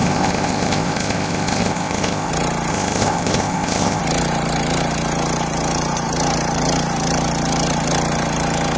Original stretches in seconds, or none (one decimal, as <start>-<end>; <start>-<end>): 2.3-2.7; 4.0-8.8